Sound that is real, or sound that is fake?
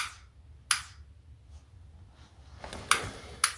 real